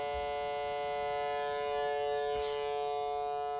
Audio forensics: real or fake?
real